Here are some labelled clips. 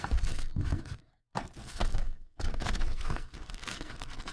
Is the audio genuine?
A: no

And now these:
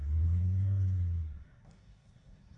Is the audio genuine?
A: no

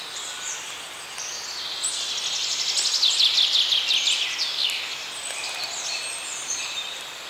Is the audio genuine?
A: yes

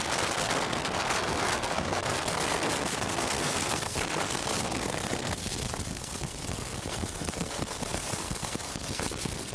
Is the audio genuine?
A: no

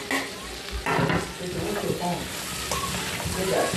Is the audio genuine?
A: yes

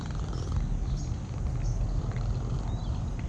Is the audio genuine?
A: yes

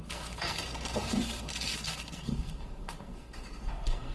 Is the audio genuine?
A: no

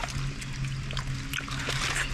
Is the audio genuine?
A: yes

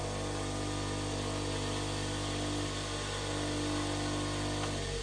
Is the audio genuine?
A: yes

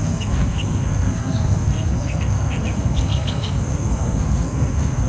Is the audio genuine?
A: no